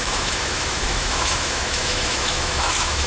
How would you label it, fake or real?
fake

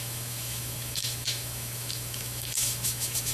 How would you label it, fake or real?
fake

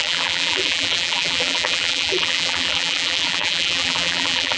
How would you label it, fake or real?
fake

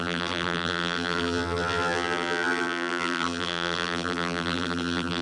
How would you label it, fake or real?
fake